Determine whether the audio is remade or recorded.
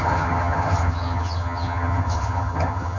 remade